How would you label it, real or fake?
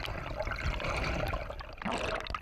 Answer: real